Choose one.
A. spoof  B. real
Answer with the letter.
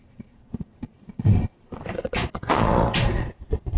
A